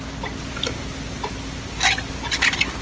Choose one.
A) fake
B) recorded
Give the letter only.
B